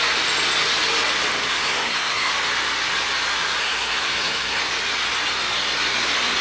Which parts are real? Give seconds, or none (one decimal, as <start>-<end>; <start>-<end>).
0.0-1.5; 2.3-3.6; 4.6-6.4